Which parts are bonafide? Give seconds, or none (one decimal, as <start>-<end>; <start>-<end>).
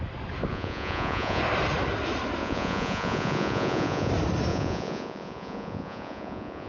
0.0-0.5; 1.4-2.4; 4.1-4.5